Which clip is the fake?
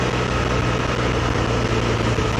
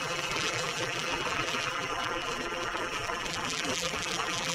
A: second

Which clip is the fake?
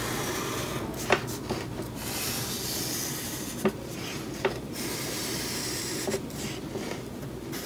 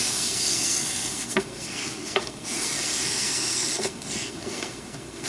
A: second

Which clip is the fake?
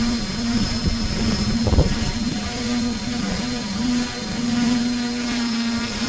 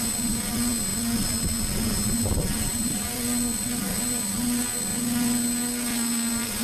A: first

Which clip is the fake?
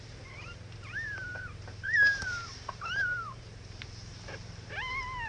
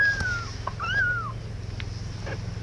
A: first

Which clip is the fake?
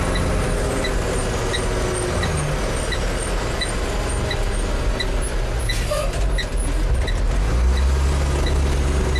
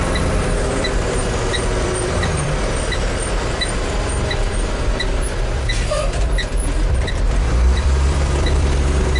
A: second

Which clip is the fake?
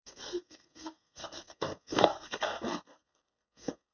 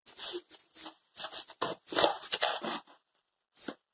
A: first